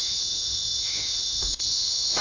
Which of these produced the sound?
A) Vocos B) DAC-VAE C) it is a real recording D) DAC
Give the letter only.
B